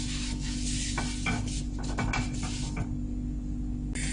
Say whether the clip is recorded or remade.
recorded